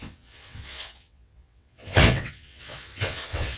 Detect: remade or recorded remade